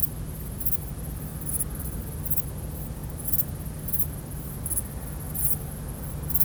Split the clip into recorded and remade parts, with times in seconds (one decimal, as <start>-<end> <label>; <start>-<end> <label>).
0.0-6.4 recorded